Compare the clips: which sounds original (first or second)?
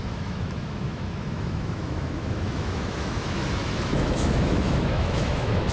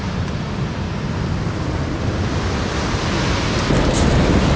second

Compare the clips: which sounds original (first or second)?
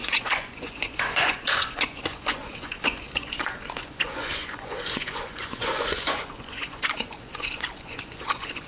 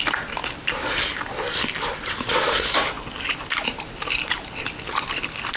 second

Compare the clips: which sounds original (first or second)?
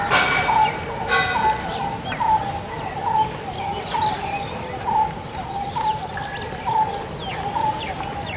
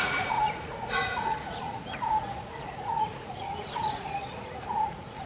first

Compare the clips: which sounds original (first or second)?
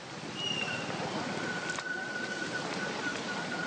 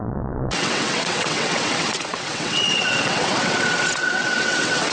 first